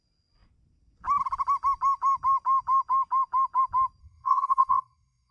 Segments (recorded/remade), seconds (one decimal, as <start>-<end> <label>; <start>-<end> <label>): 0.0-4.0 recorded; 4.0-5.3 remade